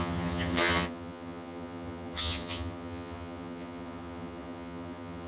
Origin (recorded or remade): remade